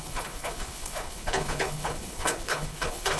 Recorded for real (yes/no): no